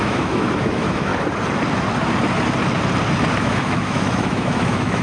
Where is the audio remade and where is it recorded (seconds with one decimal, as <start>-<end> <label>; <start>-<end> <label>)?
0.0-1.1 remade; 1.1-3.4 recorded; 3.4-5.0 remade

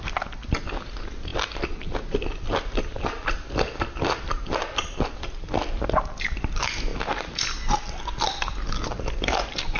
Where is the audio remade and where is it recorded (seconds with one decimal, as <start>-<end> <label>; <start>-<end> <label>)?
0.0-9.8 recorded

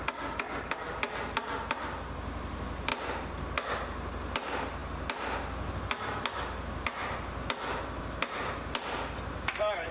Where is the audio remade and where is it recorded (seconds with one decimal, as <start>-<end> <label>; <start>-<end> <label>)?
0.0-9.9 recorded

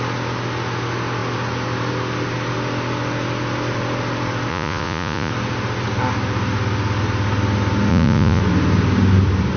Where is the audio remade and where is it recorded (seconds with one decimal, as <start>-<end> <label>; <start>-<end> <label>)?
0.0-4.5 recorded; 4.5-5.3 remade; 5.3-7.9 recorded; 7.9-8.4 remade; 8.4-9.6 recorded